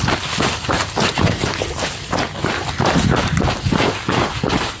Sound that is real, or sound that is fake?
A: real